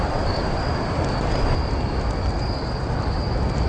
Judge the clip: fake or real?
real